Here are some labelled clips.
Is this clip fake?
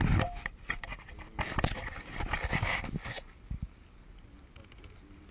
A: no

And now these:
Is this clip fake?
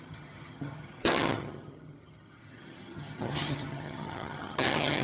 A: yes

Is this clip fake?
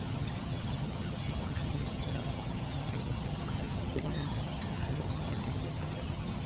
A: yes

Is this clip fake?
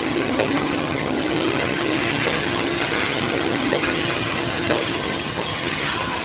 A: yes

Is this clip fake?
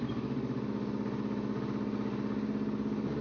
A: no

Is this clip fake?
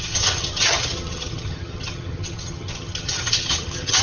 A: yes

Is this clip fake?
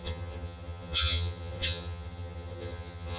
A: yes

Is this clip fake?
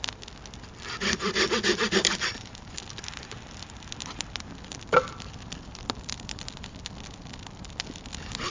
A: no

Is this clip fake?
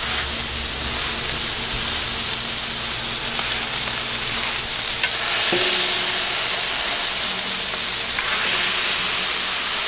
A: no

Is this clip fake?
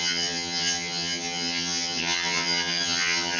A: yes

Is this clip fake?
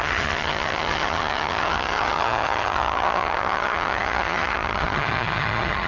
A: yes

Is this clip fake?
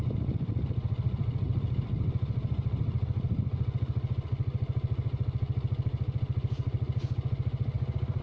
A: no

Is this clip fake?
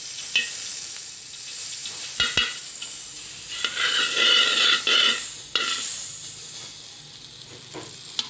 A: no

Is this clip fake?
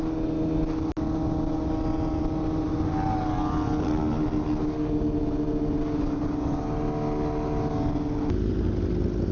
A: no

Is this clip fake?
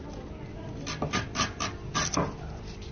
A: no